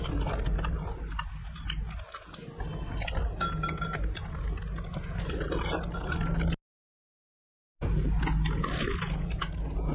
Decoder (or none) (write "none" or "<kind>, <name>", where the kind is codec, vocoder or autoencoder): none